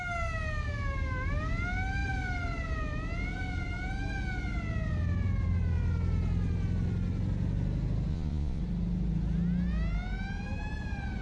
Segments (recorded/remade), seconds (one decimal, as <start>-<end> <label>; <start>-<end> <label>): 0.0-8.1 recorded; 8.1-8.6 remade; 8.6-11.2 recorded